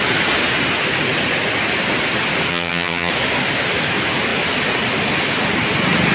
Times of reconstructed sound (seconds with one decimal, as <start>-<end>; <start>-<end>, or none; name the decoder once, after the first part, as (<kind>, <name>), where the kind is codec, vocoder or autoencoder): 2.5-3.1 (vocoder, HiFi-GAN)